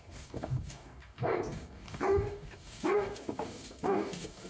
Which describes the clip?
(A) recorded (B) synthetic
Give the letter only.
B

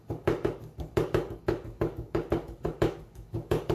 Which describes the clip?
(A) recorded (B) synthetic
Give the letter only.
B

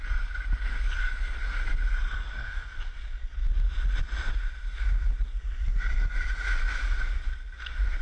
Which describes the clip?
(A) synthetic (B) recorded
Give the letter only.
B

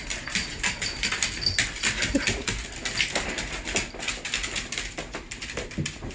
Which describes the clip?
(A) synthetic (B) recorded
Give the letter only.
B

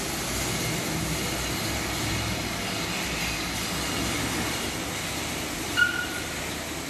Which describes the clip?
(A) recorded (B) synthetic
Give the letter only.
A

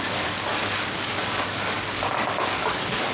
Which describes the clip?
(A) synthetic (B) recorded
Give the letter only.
A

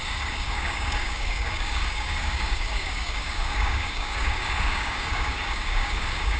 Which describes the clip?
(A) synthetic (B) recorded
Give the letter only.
A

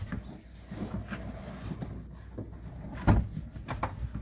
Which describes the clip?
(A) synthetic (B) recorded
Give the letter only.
B